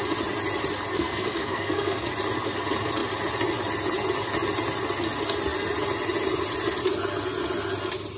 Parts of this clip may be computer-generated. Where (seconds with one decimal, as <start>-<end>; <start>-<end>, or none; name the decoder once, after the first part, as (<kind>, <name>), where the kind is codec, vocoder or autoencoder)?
0.9-2.1 (codec, SNAC)